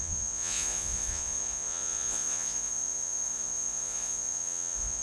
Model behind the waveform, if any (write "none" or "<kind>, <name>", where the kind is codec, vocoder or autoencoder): vocoder, Vocos